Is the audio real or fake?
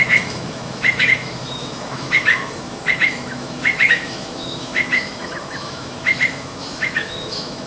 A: fake